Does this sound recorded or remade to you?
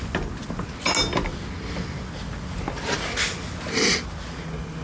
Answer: recorded